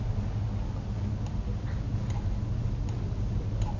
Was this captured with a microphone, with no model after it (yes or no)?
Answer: yes